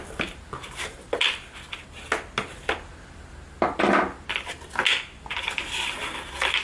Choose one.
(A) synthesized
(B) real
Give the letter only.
B